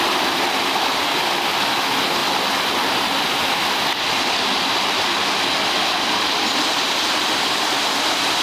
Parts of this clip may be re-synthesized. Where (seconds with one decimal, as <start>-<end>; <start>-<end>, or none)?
none